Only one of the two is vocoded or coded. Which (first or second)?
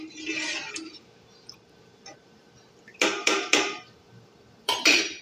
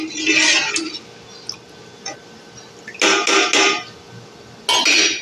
first